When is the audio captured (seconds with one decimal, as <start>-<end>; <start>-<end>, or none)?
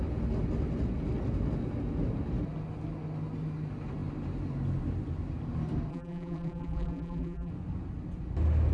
0.0-5.9; 7.5-8.7